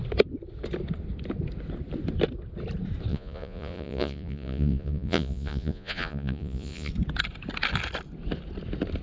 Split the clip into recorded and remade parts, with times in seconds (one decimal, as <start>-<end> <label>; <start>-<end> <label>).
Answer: 0.0-3.1 recorded; 3.1-6.9 remade; 6.9-9.0 recorded